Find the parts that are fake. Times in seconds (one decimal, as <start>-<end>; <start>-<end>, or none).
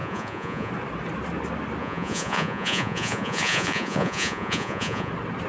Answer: 0.0-0.7; 1.8-5.1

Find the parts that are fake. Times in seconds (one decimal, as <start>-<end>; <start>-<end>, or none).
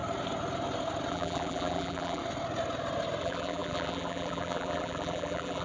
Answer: 1.1-2.2; 3.2-5.6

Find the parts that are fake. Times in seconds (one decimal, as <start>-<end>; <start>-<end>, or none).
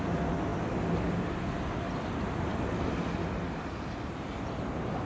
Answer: none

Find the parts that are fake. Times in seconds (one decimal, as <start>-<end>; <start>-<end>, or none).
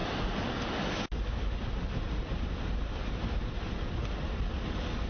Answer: none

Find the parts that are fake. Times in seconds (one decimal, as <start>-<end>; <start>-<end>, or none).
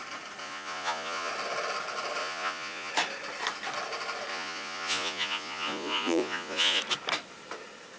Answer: 0.4-1.3; 2.2-2.9; 4.3-6.8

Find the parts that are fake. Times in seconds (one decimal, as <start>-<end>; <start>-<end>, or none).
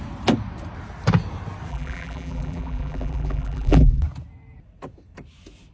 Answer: 1.7-4.0